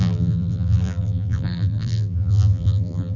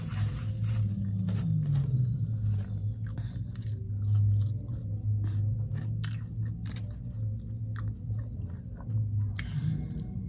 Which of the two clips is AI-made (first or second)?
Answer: first